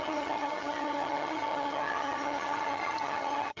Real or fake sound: fake